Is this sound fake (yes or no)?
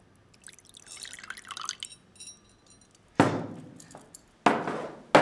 no